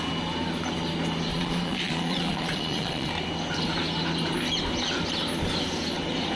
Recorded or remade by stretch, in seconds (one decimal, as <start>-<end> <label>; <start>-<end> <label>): 0.0-1.3 recorded; 1.3-3.1 remade; 3.1-6.4 recorded